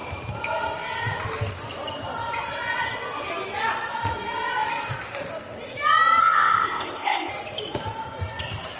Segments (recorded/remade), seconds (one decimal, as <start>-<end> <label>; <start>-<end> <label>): 0.0-6.2 recorded; 6.2-7.3 remade; 7.3-8.8 recorded